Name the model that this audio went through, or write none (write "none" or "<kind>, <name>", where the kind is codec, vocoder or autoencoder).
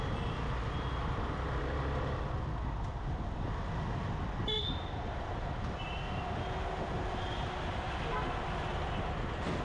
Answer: none